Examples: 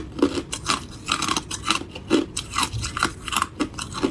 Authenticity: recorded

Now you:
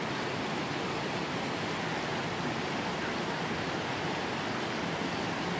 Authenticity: recorded